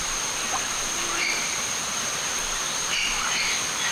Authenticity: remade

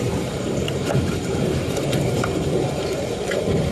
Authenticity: remade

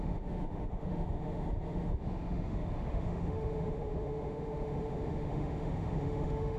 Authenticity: remade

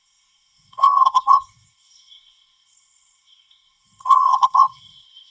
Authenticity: remade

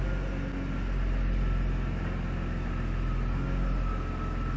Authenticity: recorded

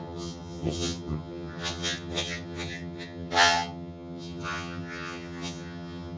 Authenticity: remade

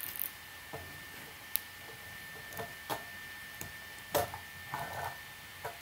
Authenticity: recorded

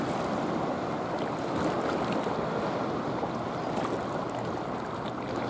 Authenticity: recorded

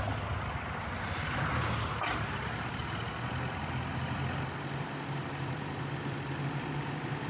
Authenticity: recorded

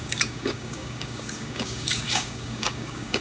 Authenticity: remade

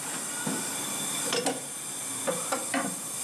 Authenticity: recorded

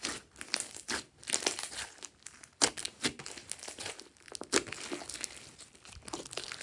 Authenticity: recorded